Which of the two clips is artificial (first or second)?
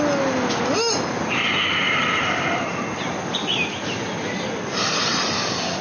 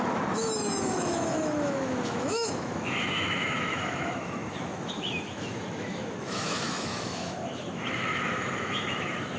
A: second